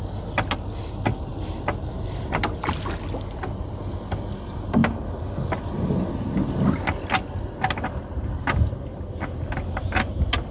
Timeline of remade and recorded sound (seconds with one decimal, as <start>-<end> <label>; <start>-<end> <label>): 0.0-10.5 recorded